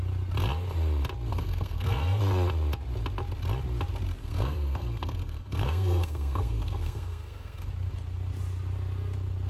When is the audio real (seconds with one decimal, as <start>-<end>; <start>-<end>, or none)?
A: 0.0-1.3; 2.2-4.2; 7.7-9.5